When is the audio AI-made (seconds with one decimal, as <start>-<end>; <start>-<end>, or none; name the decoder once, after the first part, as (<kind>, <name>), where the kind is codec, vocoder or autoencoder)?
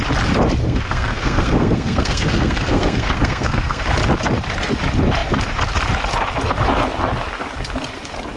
0.6-3.9 (codec, SNAC)